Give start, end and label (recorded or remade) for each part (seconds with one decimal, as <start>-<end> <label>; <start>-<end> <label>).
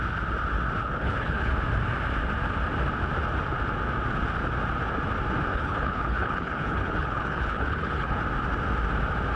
0.0-0.8 recorded; 0.8-1.5 remade; 1.5-5.5 recorded; 5.5-8.2 remade; 8.2-9.4 recorded